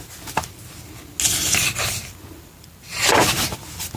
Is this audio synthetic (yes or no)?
no